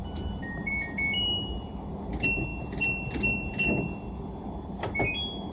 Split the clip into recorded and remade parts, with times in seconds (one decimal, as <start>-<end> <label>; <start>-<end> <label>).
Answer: 0.0-5.5 recorded